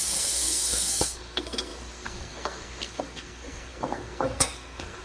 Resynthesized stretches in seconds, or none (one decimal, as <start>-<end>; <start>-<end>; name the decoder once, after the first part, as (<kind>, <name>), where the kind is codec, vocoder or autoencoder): 0.0-5.0 (codec, SNAC)